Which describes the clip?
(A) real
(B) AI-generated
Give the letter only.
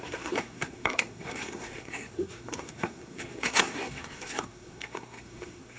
B